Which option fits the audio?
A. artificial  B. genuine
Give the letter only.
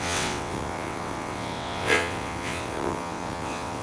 A